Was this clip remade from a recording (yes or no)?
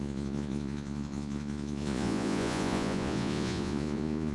yes